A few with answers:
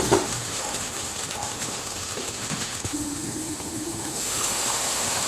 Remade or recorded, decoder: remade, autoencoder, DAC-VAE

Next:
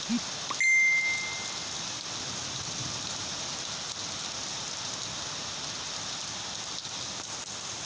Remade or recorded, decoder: recorded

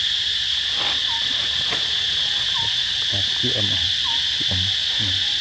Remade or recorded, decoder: recorded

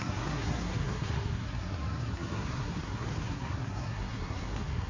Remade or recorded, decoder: remade, codec, SNAC